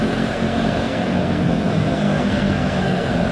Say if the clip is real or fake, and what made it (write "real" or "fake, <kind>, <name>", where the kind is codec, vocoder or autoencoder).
fake, codec, SNAC